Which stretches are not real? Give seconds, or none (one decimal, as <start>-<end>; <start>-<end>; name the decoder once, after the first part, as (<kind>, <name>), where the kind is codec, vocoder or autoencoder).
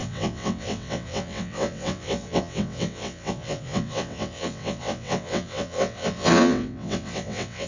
0.0-7.7 (vocoder, WaveNeXt)